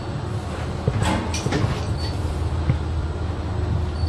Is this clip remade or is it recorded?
recorded